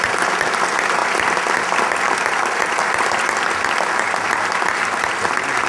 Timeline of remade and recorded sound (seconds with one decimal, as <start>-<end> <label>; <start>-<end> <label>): 0.0-5.7 recorded